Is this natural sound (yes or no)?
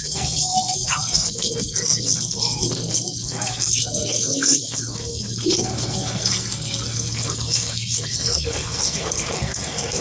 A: no